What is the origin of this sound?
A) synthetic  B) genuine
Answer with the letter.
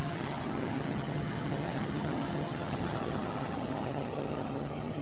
A